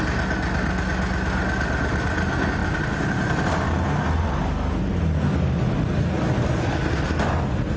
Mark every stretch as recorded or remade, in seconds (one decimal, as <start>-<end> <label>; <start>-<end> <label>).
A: 0.0-7.8 recorded